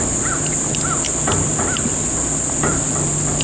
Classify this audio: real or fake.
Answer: real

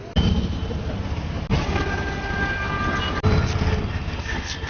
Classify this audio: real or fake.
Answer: real